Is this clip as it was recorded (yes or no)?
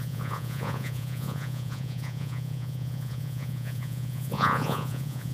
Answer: no